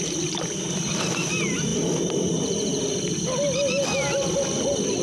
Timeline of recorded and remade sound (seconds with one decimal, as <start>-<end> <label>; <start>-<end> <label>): 0.0-5.0 recorded